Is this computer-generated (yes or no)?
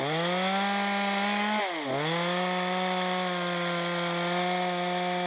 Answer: no